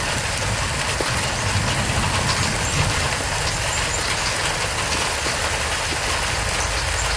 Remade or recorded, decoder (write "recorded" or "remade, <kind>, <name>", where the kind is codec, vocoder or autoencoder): recorded